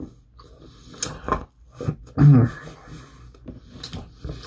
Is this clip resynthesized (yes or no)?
no